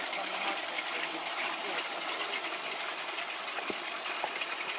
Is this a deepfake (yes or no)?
no